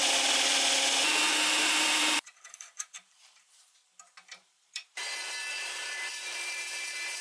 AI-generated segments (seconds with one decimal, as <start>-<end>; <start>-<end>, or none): 1.6-5.0; 5.5-7.2